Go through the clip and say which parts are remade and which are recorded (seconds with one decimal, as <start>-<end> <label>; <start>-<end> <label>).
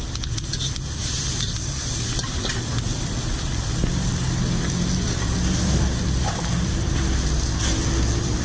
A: 0.0-8.4 recorded